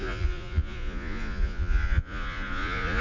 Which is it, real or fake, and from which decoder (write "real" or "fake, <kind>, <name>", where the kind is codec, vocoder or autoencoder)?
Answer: fake, vocoder, Vocos